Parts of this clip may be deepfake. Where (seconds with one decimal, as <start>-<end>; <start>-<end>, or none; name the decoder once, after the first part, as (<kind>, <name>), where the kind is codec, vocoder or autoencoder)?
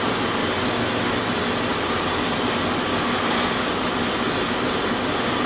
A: none